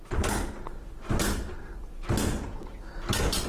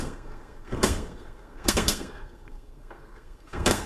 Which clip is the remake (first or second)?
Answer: second